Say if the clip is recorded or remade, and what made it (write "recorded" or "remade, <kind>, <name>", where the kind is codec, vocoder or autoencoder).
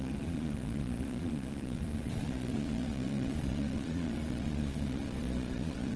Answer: remade, vocoder, Vocos